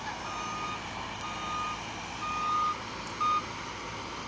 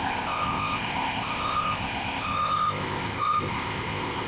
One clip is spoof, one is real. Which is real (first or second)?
first